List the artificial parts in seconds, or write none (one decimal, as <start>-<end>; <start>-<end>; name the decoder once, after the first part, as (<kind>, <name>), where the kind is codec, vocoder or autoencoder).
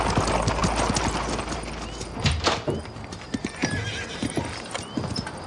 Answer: none